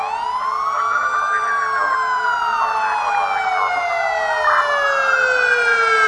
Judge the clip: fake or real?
real